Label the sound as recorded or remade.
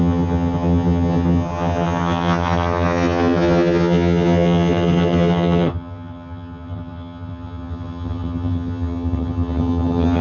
remade